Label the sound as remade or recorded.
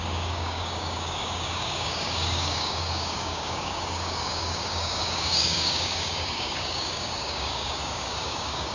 remade